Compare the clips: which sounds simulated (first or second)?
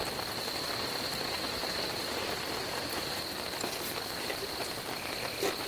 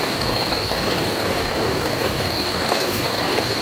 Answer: second